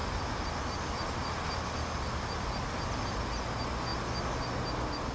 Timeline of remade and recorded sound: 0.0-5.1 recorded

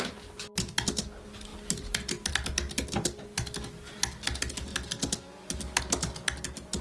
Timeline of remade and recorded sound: 0.0-6.8 recorded

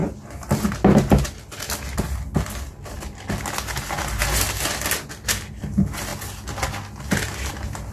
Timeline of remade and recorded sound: 0.0-7.9 recorded

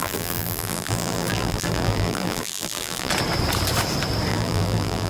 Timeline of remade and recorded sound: 0.0-3.1 remade; 3.1-4.3 recorded; 4.3-5.1 remade

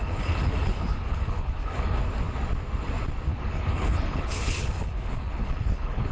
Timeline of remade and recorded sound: 0.0-2.0 remade; 2.0-3.3 recorded; 3.3-6.1 remade

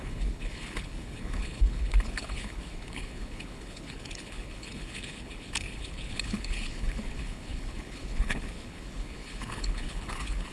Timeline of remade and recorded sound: 0.0-10.5 remade

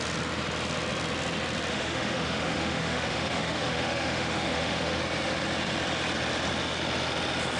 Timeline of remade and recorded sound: 0.0-1.7 recorded; 1.7-5.0 remade; 5.0-7.6 recorded